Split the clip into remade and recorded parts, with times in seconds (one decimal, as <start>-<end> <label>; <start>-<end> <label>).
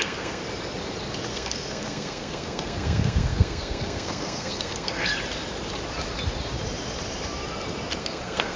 0.0-0.4 remade; 0.4-1.3 recorded; 1.3-5.1 remade; 5.1-8.0 recorded; 8.0-8.6 remade